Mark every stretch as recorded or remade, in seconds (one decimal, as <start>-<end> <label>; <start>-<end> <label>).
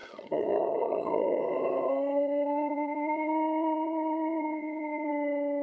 0.0-1.4 remade; 1.4-2.1 recorded; 2.1-5.1 remade; 5.1-5.6 recorded